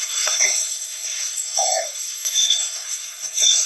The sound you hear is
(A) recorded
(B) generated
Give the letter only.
B